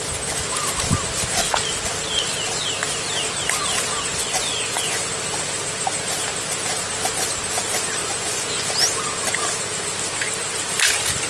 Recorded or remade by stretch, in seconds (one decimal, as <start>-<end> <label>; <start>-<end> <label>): 0.0-4.2 recorded; 4.2-5.1 remade; 5.1-8.0 recorded; 8.0-8.7 remade; 8.7-11.3 recorded